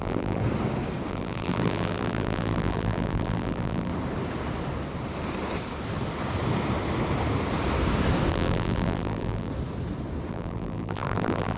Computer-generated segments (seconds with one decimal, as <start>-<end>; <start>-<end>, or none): 0.0-0.4; 1.1-3.9; 8.3-9.5; 10.3-11.6